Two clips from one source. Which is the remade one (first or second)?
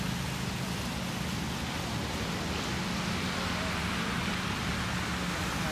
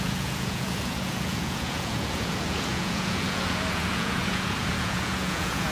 second